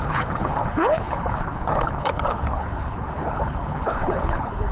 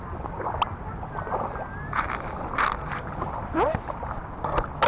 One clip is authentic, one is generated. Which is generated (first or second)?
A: first